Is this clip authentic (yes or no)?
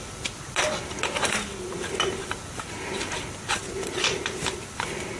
yes